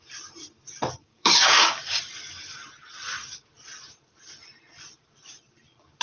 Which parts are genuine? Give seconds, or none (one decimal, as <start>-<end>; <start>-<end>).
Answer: 0.0-1.0; 2.0-6.0